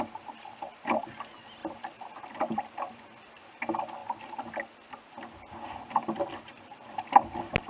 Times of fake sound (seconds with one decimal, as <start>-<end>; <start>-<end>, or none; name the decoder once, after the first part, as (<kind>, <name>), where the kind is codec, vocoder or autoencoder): 1.6-3.6 (vocoder, BigVGAN v2); 4.0-7.1